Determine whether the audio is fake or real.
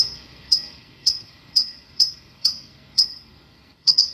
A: fake